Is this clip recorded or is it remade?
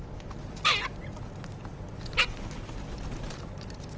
recorded